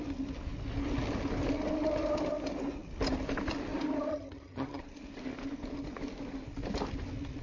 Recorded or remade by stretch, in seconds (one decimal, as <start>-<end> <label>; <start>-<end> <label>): 0.0-4.1 recorded; 4.1-4.8 remade; 4.8-7.4 recorded